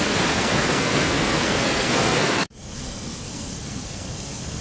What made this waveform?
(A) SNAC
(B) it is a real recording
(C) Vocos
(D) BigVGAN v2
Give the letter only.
A